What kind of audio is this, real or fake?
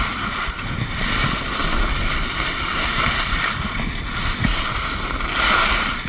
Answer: fake